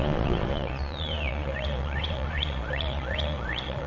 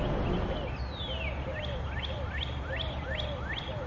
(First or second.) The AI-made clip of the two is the first